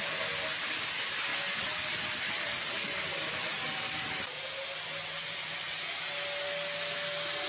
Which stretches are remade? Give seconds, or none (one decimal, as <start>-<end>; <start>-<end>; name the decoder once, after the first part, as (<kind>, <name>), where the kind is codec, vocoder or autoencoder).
none